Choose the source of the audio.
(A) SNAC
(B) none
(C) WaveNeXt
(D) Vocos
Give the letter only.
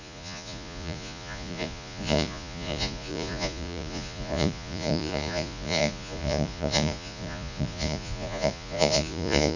D